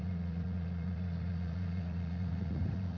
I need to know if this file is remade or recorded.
remade